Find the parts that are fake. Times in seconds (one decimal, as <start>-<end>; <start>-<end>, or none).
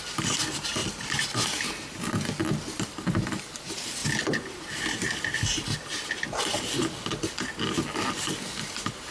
none